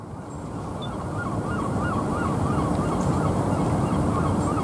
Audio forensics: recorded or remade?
remade